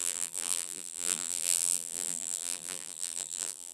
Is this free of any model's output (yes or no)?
no